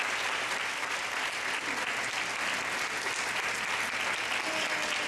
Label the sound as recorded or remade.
recorded